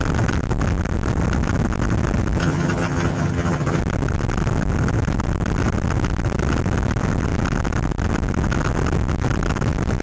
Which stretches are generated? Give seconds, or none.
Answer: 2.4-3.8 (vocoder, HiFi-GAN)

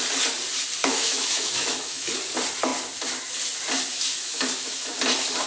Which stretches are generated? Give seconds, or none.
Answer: 0.8-2.2 (autoencoder, DAC-VAE); 3.9-4.9

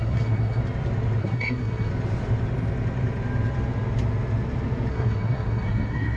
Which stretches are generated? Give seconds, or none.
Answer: 0.0-0.6 (codec, SNAC); 1.2-1.9; 4.9-6.2